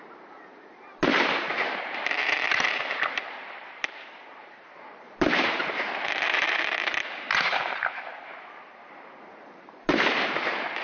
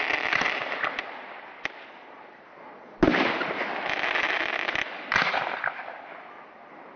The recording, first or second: second